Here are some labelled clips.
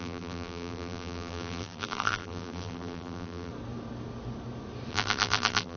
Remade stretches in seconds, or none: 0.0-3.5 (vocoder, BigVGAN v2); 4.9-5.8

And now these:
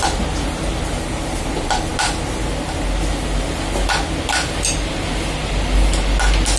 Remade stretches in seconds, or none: none

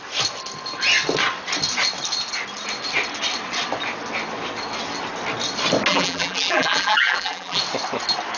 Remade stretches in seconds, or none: 5.9-7.6 (vocoder, BigVGAN v2)

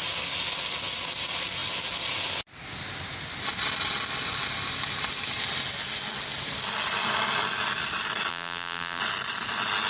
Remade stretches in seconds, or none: 8.3-9.0 (vocoder, BigVGAN v2)

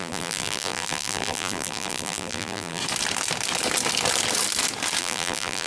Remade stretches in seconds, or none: 0.0-2.8 (vocoder, BigVGAN v2); 5.0-5.7

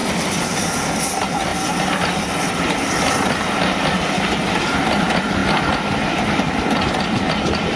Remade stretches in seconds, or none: 0.0-5.4 (vocoder, BigVGAN v2); 6.2-7.8

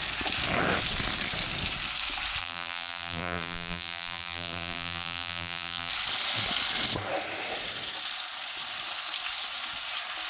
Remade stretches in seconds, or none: 2.4-5.9 (vocoder, BigVGAN v2)